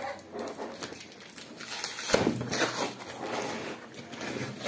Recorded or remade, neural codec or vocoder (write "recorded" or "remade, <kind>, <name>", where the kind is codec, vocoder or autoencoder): recorded